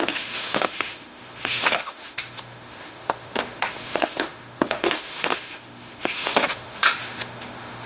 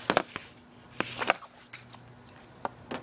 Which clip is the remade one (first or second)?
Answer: first